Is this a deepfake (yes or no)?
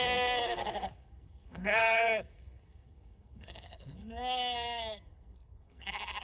yes